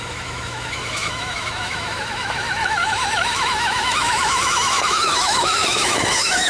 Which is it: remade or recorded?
remade